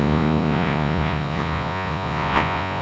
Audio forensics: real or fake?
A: fake